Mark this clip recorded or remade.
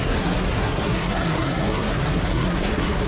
remade